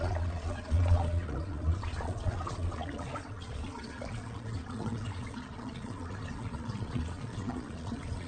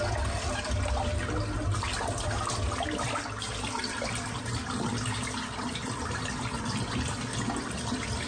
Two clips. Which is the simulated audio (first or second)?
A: first